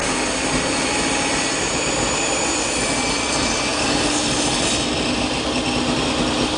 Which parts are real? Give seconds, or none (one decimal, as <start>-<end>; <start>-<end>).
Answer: 3.0-3.7